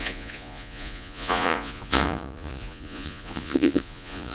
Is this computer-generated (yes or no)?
yes